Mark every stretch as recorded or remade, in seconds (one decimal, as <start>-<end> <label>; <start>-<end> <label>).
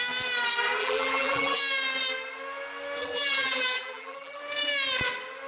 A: 0.0-0.8 recorded; 0.8-1.6 remade; 1.6-3.0 recorded; 3.0-4.4 remade; 4.4-5.5 recorded